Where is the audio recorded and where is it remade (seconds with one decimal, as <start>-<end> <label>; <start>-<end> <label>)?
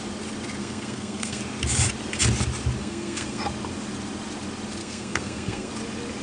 0.0-0.6 recorded; 0.6-1.4 remade; 1.4-2.8 recorded; 2.8-3.4 remade; 3.4-4.8 recorded; 4.8-5.7 remade; 5.7-6.2 recorded